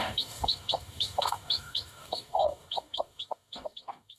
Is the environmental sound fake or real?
fake